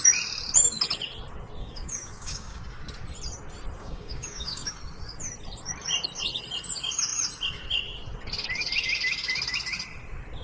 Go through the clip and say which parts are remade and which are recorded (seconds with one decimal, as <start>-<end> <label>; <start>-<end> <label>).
0.0-1.6 recorded; 1.6-2.6 remade; 2.6-3.8 recorded; 3.8-4.7 remade; 4.7-10.4 recorded